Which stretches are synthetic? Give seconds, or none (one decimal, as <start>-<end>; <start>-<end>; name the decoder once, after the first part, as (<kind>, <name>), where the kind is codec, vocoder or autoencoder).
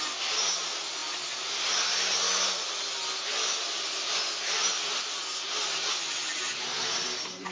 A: none